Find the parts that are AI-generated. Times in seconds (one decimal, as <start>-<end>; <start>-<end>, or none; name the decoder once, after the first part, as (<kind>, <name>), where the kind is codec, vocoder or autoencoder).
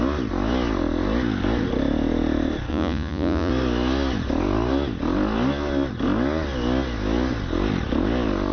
2.7-3.5 (vocoder, Vocos)